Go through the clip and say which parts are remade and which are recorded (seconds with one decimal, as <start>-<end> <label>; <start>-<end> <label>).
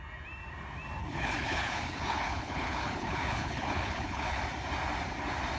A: 0.0-1.0 recorded; 1.0-4.4 remade; 4.4-5.6 recorded